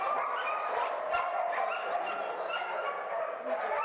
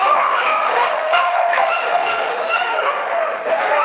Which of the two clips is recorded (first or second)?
first